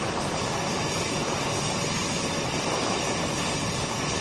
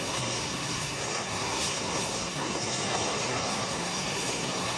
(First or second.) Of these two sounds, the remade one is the second